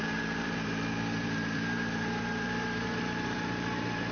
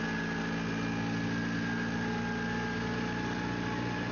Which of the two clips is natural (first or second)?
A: second